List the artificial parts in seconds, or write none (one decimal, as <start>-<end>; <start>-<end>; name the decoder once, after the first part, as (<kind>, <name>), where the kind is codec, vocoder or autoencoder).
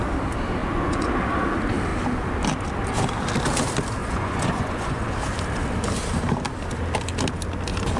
0.6-1.1 (vocoder, Vocos); 4.0-5.0